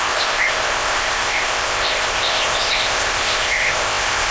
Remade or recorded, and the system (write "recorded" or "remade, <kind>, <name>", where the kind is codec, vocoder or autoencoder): remade, codec, ZipCodec